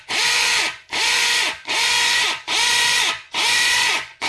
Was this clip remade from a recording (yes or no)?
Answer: yes